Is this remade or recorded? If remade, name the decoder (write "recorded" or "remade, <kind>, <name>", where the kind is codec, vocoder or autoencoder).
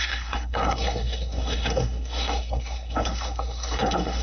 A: remade, codec, SNAC